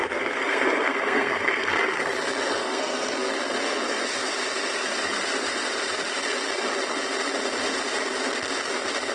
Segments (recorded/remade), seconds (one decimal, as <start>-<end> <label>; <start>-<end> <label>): 0.0-2.1 remade; 2.1-2.6 recorded; 2.6-3.3 remade; 3.3-9.1 recorded